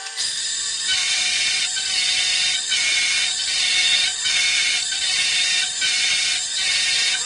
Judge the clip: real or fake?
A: fake